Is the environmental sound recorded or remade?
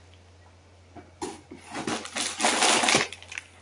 recorded